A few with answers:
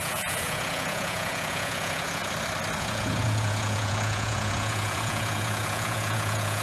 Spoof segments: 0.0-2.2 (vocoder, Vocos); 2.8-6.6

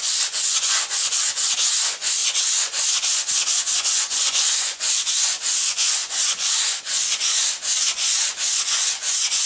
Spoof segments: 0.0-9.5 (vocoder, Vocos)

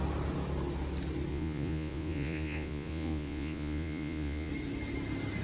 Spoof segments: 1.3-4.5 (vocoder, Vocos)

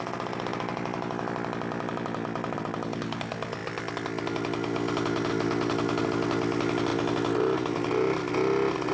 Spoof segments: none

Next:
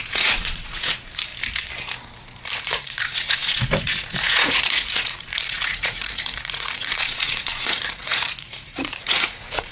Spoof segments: 0.0-1.3 (vocoder, Vocos); 2.6-9.7